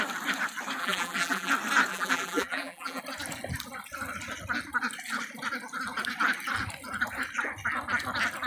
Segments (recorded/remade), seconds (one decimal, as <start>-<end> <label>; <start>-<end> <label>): 0.0-0.8 recorded; 0.8-1.5 remade; 1.5-1.9 recorded; 1.9-3.0 remade; 3.0-8.5 recorded